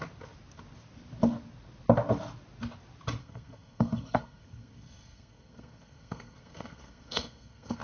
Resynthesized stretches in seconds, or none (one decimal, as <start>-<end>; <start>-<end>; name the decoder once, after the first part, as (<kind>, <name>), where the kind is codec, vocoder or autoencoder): 3.2-7.8 (codec, SNAC)